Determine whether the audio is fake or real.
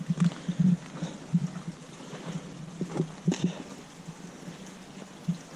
real